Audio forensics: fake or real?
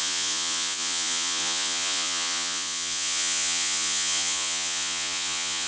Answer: fake